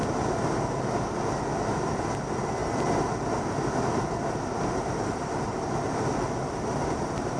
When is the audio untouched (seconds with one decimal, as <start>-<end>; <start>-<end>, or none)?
0.0-7.4